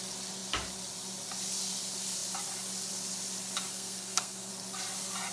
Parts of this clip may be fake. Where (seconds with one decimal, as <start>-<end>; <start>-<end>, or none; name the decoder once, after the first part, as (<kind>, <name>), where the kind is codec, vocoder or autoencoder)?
3.7-4.5 (codec, SNAC)

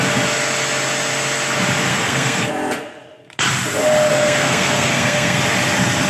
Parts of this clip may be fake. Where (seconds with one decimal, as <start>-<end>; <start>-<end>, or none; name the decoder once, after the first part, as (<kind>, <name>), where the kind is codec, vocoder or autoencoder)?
1.9-2.5 (codec, SNAC); 4.1-5.4

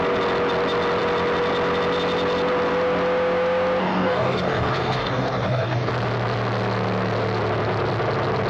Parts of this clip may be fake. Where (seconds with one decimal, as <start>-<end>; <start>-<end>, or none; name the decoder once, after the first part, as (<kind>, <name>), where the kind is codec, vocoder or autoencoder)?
3.8-5.9 (codec, DAC)

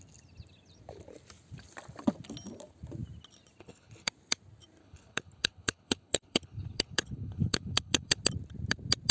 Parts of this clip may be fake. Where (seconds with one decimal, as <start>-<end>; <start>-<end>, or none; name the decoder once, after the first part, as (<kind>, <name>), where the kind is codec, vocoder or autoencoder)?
3.6-4.1 (codec, HILCodec); 4.8-8.2

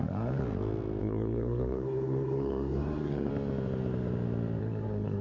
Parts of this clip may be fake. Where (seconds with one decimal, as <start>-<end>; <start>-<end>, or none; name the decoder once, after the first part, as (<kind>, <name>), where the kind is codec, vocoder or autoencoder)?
0.0-0.4 (codec, SNAC); 1.0-3.3; 4.6-5.2

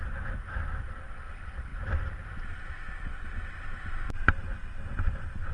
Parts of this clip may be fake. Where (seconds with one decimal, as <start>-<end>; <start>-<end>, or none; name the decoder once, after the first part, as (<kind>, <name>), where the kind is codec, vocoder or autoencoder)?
none